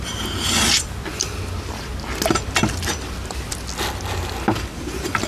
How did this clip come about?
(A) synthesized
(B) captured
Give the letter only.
B